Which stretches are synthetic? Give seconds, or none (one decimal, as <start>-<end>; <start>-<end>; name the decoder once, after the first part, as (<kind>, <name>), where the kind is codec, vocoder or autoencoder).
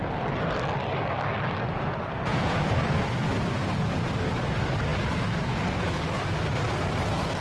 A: 2.3-2.9 (vocoder, Vocos)